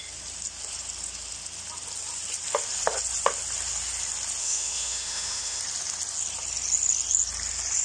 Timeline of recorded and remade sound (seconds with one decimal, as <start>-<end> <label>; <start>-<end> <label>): 0.0-4.4 recorded; 4.4-5.6 remade; 5.6-7.8 recorded